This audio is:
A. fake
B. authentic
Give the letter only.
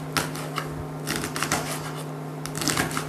B